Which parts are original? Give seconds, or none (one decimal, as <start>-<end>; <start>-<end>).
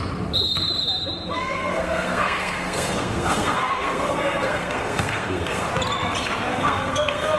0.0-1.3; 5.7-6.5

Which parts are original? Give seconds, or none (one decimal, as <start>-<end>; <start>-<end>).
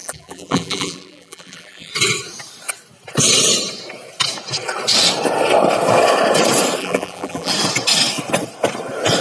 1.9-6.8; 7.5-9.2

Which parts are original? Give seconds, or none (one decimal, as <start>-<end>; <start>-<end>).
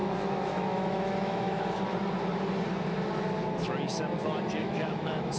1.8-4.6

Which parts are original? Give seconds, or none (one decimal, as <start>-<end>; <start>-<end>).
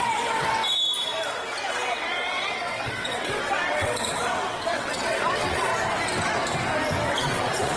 0.6-1.7; 5.7-7.1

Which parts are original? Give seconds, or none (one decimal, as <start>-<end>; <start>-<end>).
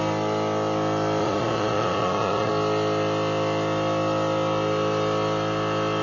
0.0-1.2; 2.5-6.0